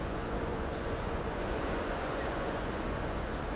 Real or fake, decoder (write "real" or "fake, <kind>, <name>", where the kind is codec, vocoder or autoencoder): fake, vocoder, Vocos